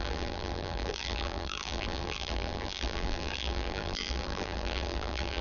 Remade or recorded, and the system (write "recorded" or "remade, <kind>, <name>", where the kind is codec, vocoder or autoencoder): remade, vocoder, BigVGAN v2